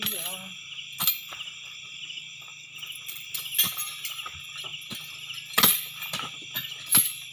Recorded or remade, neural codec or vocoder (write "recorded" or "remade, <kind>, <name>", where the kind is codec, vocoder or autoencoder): recorded